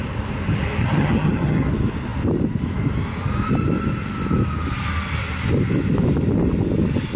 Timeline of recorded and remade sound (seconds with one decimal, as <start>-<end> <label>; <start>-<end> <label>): 0.0-0.8 recorded; 0.8-1.7 remade; 1.7-7.2 recorded